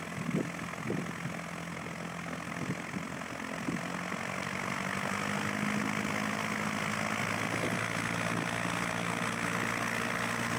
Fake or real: real